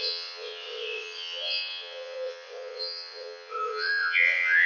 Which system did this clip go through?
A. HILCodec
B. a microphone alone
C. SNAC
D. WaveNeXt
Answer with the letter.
D